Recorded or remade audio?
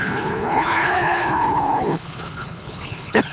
remade